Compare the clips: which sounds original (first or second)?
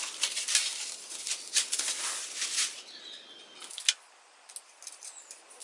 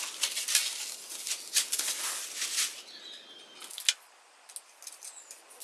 second